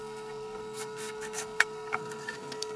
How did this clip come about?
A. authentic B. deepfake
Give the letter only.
B